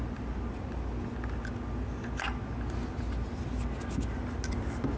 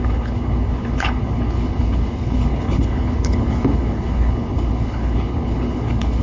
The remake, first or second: second